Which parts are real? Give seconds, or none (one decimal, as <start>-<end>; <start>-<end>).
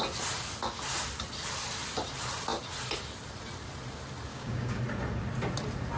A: 0.0-4.3; 4.8-6.0